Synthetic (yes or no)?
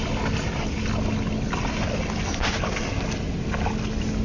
no